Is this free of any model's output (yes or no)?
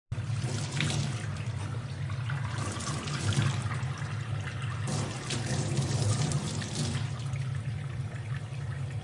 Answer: yes